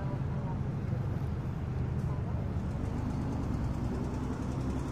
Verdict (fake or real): real